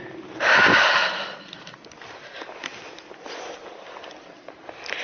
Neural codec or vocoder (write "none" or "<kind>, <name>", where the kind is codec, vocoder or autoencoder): none